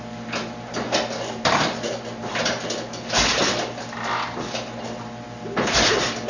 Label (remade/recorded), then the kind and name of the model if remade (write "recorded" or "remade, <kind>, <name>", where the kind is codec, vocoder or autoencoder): recorded